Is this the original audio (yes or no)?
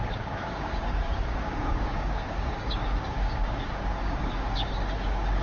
no